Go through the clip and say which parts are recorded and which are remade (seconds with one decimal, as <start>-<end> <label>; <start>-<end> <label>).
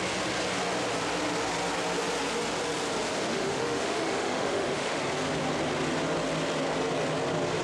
0.0-3.3 recorded; 3.3-5.0 remade; 5.0-7.6 recorded